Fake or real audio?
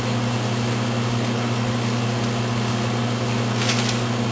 real